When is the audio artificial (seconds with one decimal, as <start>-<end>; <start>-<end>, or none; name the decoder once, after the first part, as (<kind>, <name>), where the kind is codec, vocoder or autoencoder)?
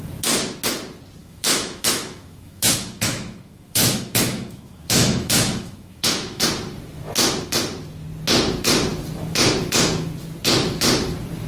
1.2-6.4 (autoencoder, DAC-VAE)